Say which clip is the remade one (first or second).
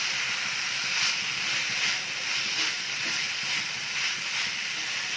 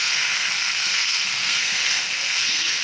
second